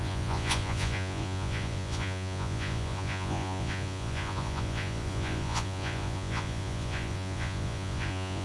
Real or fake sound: fake